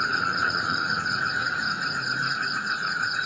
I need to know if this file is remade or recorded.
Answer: remade